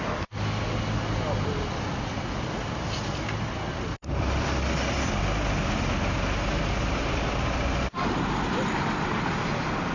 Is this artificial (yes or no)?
no